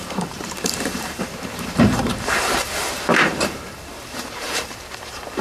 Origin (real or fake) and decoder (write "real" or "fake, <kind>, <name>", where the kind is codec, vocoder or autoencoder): fake, vocoder, BigVGAN v2